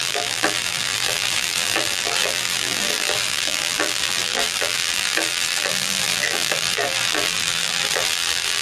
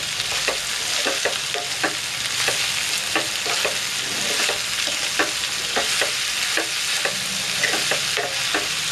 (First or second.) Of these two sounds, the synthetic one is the first